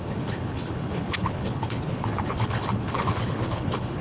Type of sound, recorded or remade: remade